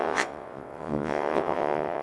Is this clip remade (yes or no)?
yes